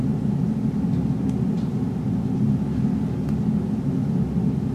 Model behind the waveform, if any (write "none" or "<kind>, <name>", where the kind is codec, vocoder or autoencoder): none